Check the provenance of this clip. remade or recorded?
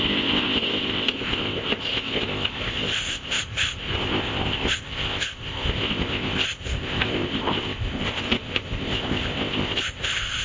remade